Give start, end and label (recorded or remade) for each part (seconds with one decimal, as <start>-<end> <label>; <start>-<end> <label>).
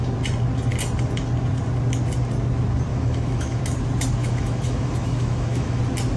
0.0-2.9 recorded; 2.9-3.6 remade; 3.6-4.2 recorded; 4.2-5.8 remade; 5.8-6.2 recorded